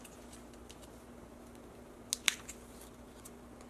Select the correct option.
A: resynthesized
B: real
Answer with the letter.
B